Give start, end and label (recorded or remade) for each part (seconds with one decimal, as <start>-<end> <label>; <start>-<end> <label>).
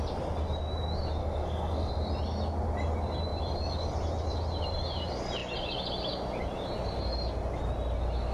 0.0-1.2 recorded; 1.2-1.9 remade; 1.9-8.3 recorded